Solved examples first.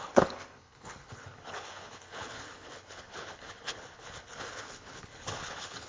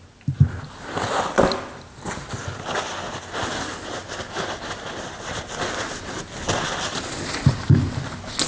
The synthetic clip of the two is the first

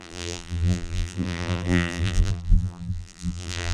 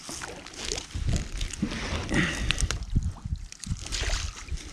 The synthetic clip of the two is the first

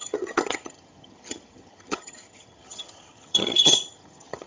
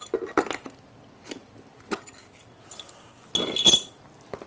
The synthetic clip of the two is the first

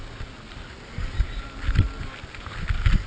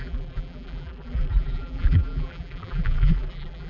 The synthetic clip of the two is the second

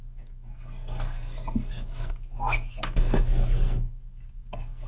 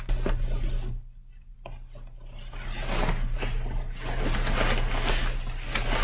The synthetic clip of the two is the first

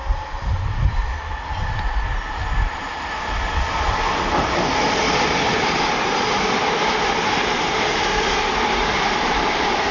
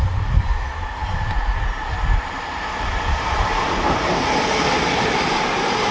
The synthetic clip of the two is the second